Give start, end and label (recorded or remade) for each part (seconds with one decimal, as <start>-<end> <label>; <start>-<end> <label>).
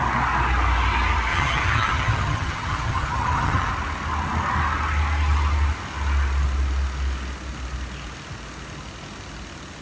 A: 0.0-1.3 recorded; 1.3-3.7 remade; 3.7-9.8 recorded